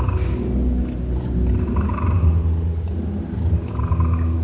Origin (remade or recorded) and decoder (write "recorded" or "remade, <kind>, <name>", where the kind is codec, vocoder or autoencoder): recorded